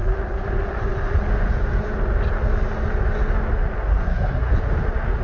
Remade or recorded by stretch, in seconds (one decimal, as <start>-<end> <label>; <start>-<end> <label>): 0.0-3.9 recorded; 3.9-4.5 remade; 4.5-5.2 recorded